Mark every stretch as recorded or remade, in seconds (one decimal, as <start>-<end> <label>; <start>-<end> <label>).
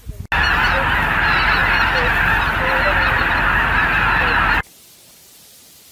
0.0-5.9 recorded